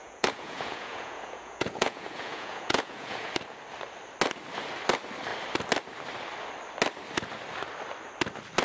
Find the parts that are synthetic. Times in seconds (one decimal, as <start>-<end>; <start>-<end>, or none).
0.0-3.3